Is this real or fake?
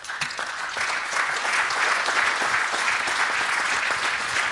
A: fake